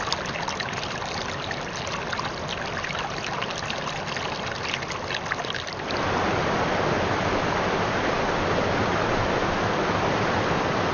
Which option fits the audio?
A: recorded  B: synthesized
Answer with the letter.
A